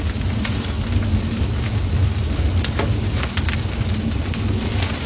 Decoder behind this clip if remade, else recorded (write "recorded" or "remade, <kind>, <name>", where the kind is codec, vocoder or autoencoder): recorded